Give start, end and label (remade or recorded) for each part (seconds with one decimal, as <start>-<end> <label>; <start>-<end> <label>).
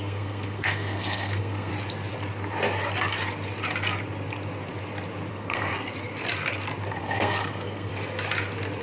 0.0-1.7 remade; 1.7-5.3 recorded; 5.3-5.7 remade; 5.7-7.0 recorded; 7.0-7.9 remade; 7.9-8.8 recorded